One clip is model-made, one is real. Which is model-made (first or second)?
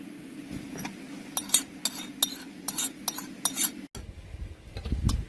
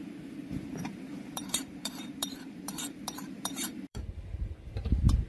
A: second